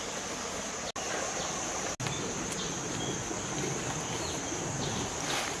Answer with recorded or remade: recorded